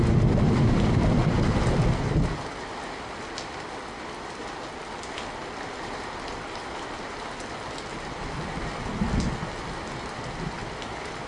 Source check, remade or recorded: recorded